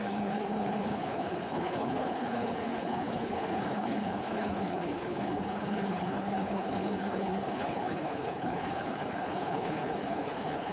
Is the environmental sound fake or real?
fake